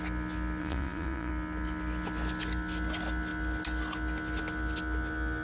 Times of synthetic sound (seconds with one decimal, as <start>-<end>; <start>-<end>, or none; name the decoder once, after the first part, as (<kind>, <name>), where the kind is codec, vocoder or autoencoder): 0.6-1.3 (vocoder, Vocos)